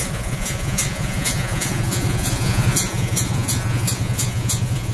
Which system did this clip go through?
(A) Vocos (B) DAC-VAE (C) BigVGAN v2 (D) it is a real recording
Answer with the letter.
A